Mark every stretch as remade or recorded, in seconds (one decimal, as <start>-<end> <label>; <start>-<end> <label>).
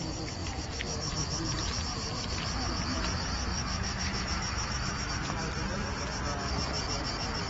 0.0-3.5 recorded; 3.5-5.1 remade; 5.1-7.5 recorded